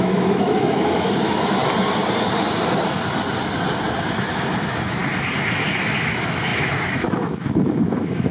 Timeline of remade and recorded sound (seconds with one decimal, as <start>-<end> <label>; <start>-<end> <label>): 0.0-1.6 remade; 1.6-3.9 recorded; 3.9-5.0 remade; 5.0-5.8 recorded; 5.8-8.3 remade